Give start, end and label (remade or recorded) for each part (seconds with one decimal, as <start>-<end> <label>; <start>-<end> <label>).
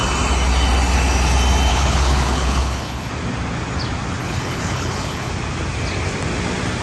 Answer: 0.0-1.7 recorded; 1.7-3.1 remade; 3.1-4.2 recorded; 4.2-5.3 remade; 5.3-6.8 recorded